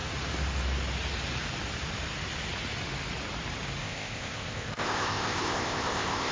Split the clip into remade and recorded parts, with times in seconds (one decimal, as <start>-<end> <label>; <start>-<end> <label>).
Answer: 0.0-3.8 recorded; 3.8-6.3 remade